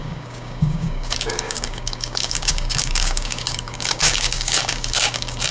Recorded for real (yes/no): no